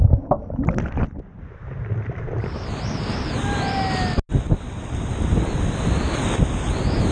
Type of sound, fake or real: real